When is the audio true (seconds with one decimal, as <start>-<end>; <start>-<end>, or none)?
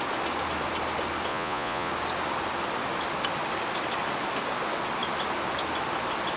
0.0-1.3; 1.9-6.4